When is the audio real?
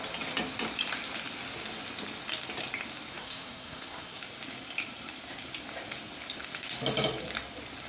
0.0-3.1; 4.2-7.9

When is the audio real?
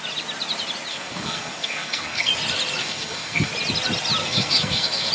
0.0-0.9; 2.3-2.8; 3.5-4.2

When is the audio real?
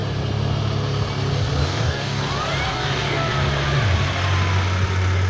0.0-1.6; 2.2-2.7; 3.3-5.3